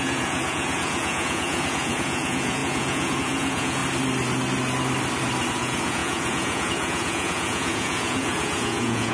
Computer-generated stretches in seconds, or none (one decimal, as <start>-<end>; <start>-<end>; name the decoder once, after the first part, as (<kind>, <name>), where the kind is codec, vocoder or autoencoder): 0.0-3.8 (vocoder, Vocos); 5.5-9.1

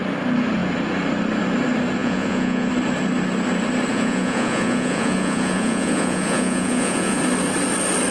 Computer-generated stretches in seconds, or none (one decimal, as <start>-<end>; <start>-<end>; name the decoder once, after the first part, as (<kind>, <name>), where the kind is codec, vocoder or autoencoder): 2.0-2.7 (vocoder, Vocos); 3.9-7.2

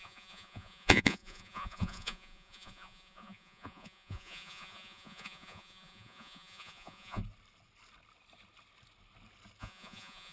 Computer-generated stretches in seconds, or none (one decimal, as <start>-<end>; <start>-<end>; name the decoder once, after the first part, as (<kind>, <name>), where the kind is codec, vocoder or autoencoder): 0.0-7.2 (vocoder, Vocos); 9.6-10.3